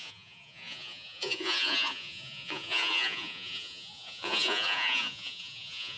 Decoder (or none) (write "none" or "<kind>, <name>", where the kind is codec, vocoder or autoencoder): vocoder, Vocos